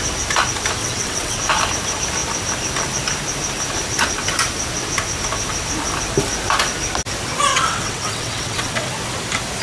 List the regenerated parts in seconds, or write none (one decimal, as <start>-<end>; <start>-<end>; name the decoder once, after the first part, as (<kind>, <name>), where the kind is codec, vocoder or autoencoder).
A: 0.8-1.4 (vocoder, WaveNeXt); 7.5-8.9